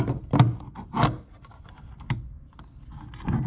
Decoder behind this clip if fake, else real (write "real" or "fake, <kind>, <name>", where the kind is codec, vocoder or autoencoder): real